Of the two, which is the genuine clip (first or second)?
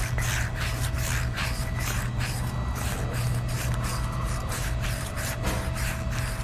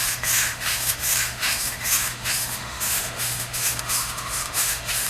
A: first